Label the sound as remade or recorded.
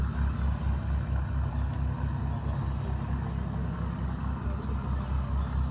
recorded